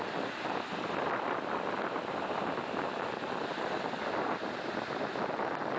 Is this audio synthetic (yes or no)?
no